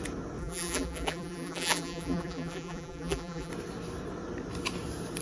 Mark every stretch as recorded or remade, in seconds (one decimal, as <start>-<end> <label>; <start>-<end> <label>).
0.0-0.4 recorded; 0.4-3.5 remade; 3.5-5.2 recorded